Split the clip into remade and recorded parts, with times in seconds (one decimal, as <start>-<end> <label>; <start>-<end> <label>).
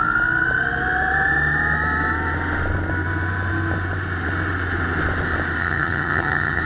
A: 0.0-5.6 recorded; 5.6-6.6 remade